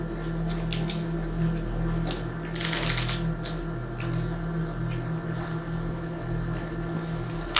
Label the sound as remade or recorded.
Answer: recorded